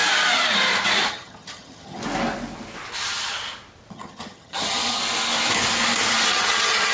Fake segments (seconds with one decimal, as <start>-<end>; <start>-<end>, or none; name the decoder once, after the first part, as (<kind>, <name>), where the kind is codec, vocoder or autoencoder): 1.1-2.0 (vocoder, HiFi-GAN); 3.9-5.0; 6.3-6.9